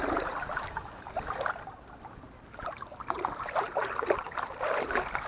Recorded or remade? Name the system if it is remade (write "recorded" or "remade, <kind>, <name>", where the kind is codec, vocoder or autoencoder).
recorded